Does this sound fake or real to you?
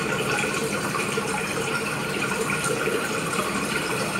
fake